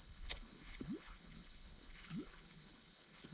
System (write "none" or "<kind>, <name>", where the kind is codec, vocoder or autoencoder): codec, HILCodec